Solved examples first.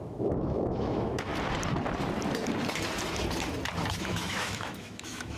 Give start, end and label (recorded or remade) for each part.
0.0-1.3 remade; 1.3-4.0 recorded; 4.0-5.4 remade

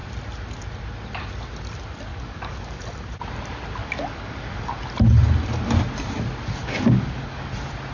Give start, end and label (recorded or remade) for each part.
0.0-2.1 recorded; 2.1-2.8 remade; 2.8-3.8 recorded; 3.8-4.8 remade; 4.8-6.6 recorded; 6.6-7.5 remade; 7.5-7.9 recorded

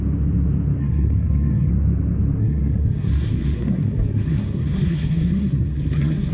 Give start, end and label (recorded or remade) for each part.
0.0-0.8 recorded; 0.8-1.7 remade; 1.7-2.4 recorded; 2.4-6.3 remade

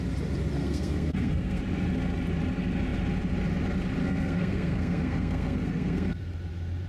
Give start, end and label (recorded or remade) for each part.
0.0-0.6 recorded; 0.6-1.6 remade; 1.6-4.0 recorded; 4.0-6.2 remade; 6.2-6.9 recorded